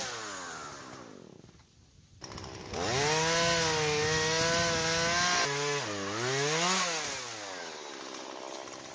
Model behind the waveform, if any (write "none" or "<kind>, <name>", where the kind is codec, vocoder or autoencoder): none